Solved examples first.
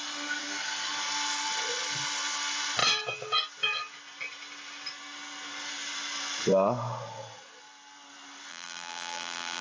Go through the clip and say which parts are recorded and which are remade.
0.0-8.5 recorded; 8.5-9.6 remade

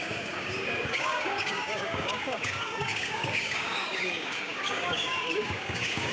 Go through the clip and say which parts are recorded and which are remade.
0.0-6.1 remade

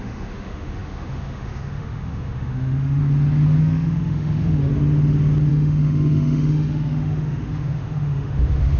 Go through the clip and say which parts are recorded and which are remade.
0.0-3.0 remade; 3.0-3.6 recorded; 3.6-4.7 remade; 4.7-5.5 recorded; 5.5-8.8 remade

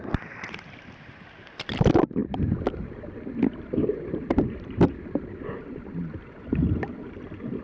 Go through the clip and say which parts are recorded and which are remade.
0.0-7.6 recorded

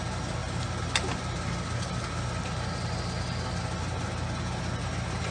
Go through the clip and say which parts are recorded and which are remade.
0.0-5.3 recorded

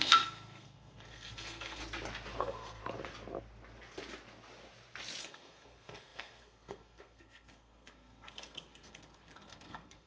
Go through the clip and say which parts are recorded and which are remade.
0.0-1.8 remade; 1.8-2.4 recorded; 2.4-2.8 remade; 2.8-5.2 recorded; 5.2-10.1 remade